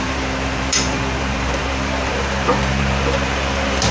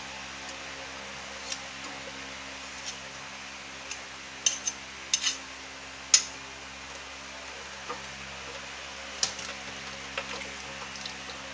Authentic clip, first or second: second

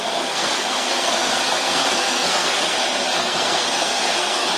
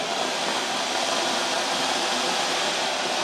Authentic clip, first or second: second